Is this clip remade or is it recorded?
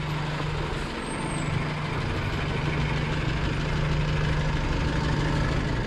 recorded